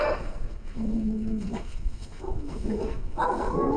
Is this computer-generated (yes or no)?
yes